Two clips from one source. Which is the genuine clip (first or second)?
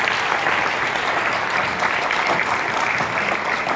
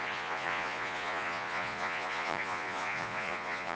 first